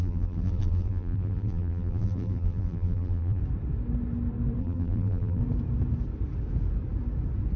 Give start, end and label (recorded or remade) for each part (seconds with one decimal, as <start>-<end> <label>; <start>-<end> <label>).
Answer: 0.0-3.4 remade; 3.4-4.6 recorded; 4.6-5.4 remade; 5.4-7.6 recorded